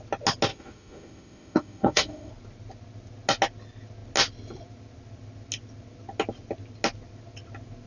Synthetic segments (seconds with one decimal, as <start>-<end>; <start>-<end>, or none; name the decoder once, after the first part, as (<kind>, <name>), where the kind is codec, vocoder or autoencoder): 0.5-2.3 (autoencoder, DAC-VAE)